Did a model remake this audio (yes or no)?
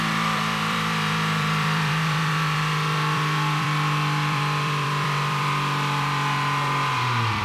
yes